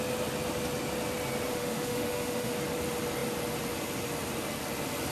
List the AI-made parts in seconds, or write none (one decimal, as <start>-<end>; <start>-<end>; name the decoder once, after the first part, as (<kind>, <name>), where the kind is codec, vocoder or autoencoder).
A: 1.5-2.5 (autoencoder, DAC-VAE)